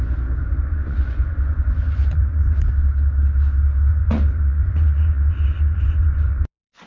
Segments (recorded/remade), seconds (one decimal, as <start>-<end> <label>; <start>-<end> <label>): 0.0-0.4 recorded; 0.4-2.7 remade; 2.7-3.9 recorded; 3.9-6.9 remade